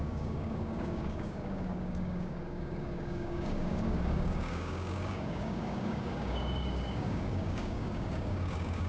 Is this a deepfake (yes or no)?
yes